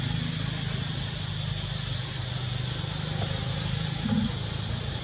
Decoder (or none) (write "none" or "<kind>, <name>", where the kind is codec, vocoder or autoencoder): none